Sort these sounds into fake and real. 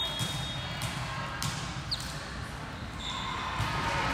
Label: real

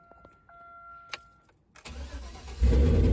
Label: real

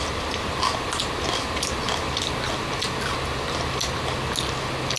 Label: real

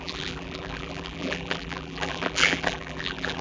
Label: fake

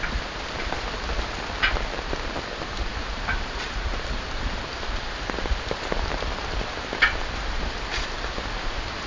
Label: real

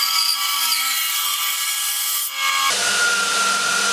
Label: real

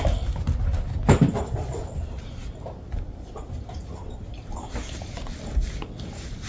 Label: fake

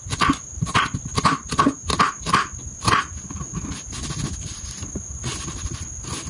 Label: real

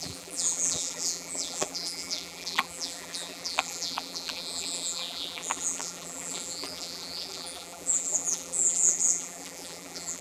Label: fake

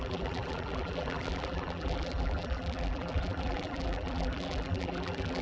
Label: fake